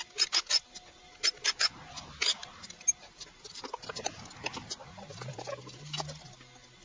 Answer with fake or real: real